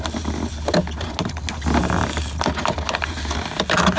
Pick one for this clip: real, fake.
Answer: real